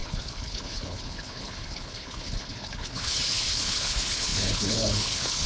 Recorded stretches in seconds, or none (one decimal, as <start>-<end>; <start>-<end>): none